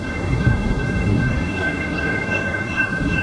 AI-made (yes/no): yes